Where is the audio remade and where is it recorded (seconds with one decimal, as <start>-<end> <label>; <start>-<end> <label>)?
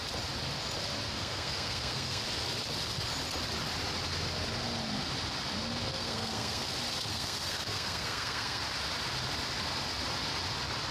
0.0-1.1 recorded; 1.1-2.2 remade; 2.2-5.9 recorded; 5.9-6.6 remade; 6.6-7.1 recorded; 7.1-8.6 remade; 8.6-10.9 recorded